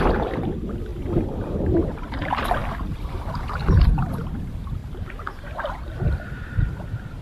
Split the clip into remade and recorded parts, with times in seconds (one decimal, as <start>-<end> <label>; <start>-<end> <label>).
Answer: 0.0-7.2 recorded